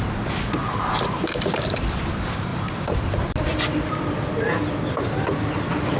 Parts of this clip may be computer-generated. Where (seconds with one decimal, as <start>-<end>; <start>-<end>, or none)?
0.6-1.2; 2.5-3.1; 3.5-4.2